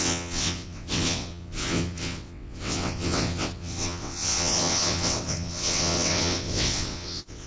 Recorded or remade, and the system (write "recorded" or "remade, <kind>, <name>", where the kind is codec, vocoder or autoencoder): remade, vocoder, WaveNeXt